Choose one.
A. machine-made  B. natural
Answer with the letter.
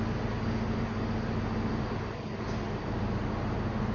B